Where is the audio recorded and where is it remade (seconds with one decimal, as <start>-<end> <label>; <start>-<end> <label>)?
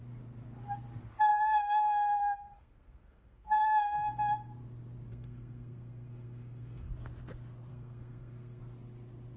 0.0-1.3 recorded; 1.3-3.6 remade; 3.6-5.1 recorded; 5.1-6.9 remade; 6.9-7.7 recorded; 7.7-8.6 remade; 8.6-9.4 recorded